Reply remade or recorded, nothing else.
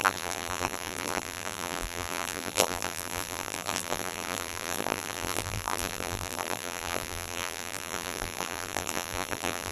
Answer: remade